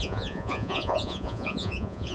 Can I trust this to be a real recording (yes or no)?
no